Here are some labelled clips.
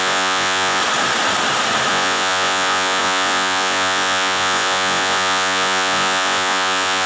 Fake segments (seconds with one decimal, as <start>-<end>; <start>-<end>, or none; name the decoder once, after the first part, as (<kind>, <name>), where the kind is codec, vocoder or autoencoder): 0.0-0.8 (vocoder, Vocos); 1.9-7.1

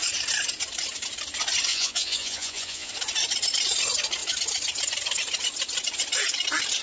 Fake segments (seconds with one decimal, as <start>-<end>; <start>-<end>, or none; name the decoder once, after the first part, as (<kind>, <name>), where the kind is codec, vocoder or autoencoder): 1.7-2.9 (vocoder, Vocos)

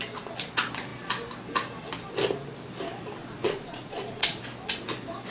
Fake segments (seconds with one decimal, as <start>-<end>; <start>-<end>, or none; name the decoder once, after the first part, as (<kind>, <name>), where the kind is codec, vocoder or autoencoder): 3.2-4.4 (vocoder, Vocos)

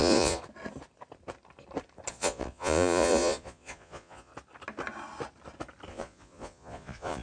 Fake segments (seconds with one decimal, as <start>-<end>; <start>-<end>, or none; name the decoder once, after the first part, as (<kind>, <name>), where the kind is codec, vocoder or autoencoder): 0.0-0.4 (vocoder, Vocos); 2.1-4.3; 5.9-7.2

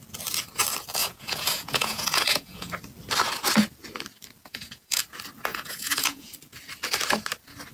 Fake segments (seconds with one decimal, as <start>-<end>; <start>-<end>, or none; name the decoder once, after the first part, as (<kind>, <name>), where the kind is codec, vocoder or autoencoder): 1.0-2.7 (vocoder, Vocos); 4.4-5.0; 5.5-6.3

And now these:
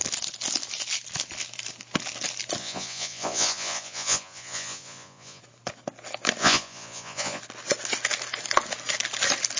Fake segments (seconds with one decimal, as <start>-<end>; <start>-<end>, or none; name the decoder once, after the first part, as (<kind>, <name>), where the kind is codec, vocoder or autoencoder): 2.6-5.4 (vocoder, Vocos); 6.4-7.4